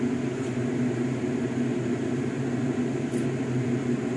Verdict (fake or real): real